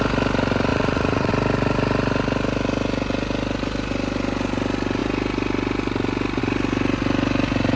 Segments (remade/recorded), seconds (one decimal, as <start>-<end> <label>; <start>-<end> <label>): 0.0-0.7 recorded; 0.7-1.3 remade; 1.3-7.8 recorded